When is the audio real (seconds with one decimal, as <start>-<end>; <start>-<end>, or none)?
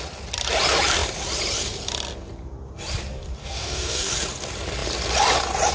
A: 0.0-3.4; 4.1-5.7